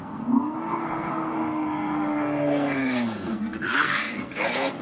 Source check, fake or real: fake